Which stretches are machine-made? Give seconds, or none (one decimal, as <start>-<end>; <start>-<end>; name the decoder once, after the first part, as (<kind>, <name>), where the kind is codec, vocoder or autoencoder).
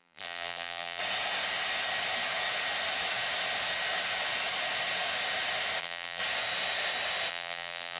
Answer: 0.0-1.0 (vocoder, BigVGAN v2); 5.8-6.2; 7.3-8.0